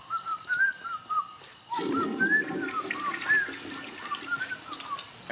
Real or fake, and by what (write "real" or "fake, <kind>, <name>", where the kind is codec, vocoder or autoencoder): real